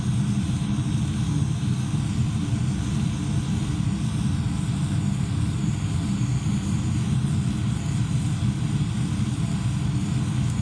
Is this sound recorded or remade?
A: recorded